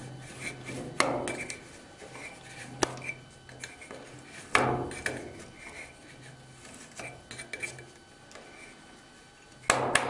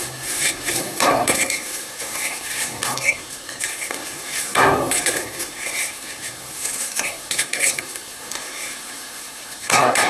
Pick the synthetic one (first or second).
second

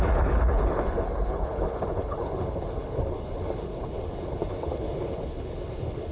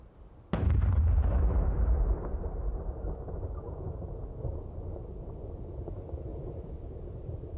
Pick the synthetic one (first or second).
first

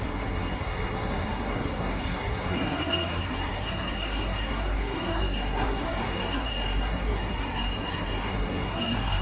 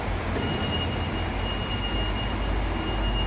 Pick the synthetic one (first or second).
first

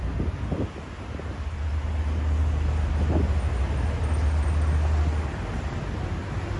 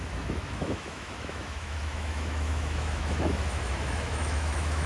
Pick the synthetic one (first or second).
second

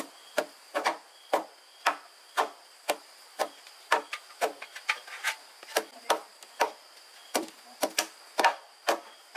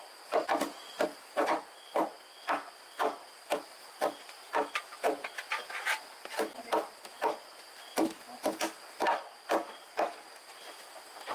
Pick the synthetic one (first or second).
first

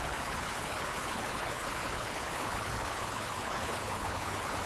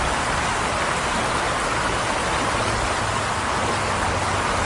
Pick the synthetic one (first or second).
first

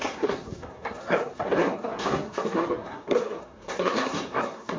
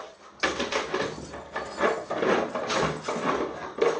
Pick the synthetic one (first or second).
first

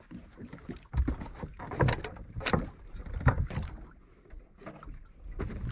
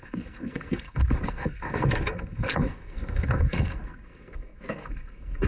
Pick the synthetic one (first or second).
second